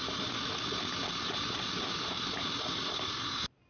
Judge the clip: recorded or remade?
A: recorded